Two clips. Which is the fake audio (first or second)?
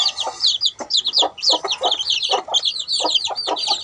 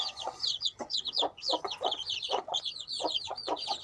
second